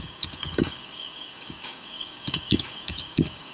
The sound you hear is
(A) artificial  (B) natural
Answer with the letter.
A